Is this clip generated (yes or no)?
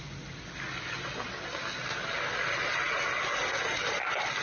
no